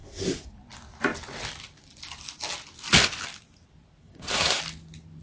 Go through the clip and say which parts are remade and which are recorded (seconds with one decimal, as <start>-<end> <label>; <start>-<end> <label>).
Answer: 0.0-0.5 remade; 0.5-4.0 recorded; 4.0-4.6 remade; 4.6-5.2 recorded